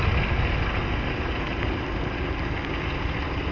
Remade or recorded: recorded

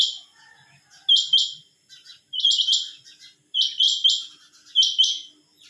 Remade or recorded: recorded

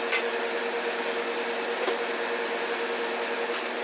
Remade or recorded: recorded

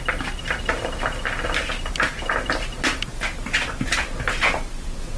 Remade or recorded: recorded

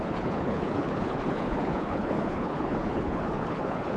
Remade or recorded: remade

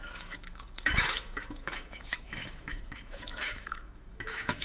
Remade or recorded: remade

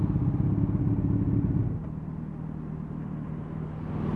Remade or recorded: recorded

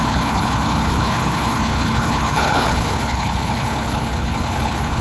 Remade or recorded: remade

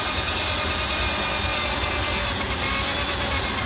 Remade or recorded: recorded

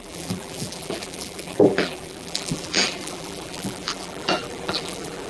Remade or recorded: remade